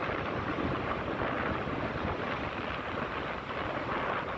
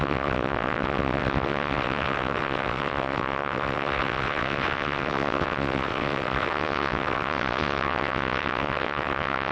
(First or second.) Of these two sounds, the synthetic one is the second